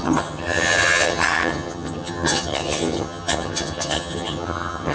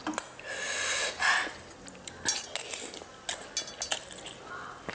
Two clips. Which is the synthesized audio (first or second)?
first